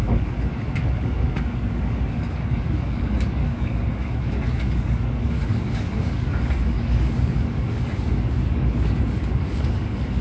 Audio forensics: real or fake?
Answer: fake